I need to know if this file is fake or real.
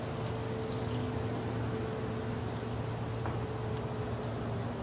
real